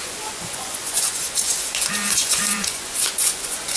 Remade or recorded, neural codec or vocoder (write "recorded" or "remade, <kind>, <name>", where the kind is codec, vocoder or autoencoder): remade, vocoder, Vocos